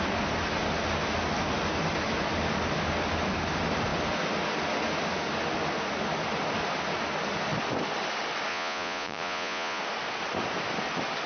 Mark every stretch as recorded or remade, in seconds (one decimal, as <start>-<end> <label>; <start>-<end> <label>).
0.0-8.5 recorded; 8.5-9.8 remade; 9.8-11.3 recorded